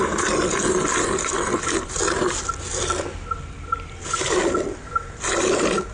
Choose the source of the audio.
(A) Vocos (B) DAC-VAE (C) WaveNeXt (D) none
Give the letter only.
D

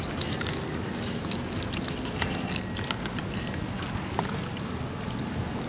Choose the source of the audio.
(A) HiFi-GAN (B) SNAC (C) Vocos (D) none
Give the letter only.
D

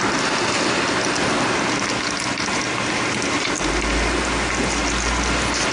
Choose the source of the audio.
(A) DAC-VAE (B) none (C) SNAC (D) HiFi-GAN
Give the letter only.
B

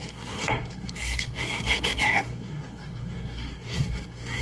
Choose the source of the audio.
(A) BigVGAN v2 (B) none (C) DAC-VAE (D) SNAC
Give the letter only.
D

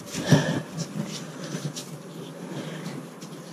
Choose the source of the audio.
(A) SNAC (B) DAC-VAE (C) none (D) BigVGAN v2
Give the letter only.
C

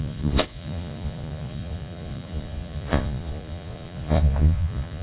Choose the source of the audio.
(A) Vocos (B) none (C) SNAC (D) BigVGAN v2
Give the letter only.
A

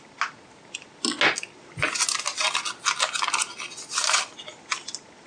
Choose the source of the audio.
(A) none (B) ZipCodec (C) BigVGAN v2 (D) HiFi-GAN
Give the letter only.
A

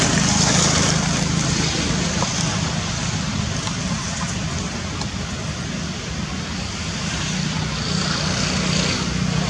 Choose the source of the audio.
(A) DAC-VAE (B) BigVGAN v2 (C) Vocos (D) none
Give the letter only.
D